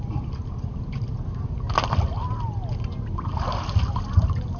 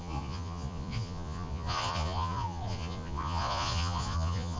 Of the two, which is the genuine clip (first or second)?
first